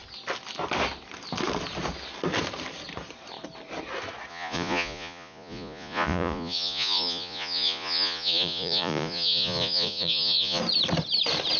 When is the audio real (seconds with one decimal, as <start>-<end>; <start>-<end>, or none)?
0.0-4.3; 10.6-11.6